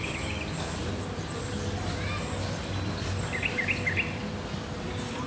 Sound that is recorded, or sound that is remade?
recorded